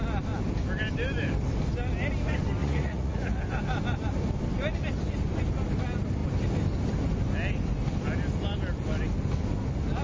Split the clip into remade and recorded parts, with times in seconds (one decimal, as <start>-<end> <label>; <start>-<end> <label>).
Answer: 0.0-2.6 recorded; 2.6-3.4 remade; 3.4-10.0 recorded